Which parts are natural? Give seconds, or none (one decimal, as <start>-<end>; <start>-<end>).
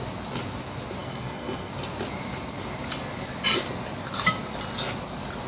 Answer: 0.0-1.0; 1.7-5.5